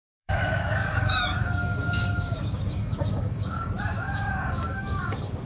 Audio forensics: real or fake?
fake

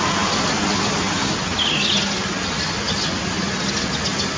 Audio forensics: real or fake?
real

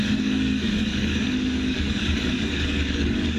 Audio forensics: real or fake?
fake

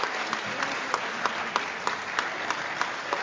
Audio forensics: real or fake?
real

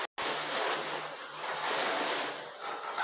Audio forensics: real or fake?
real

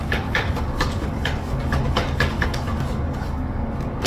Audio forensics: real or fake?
fake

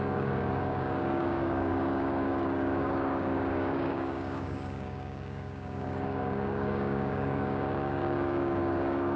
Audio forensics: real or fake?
fake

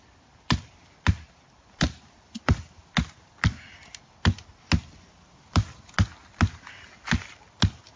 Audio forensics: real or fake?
real